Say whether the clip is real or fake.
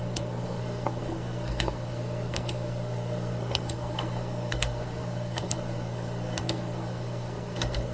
fake